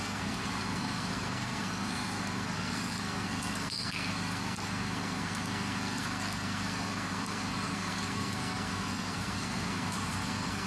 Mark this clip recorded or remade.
remade